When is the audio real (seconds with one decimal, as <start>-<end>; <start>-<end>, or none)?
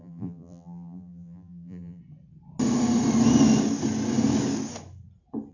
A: 2.0-5.5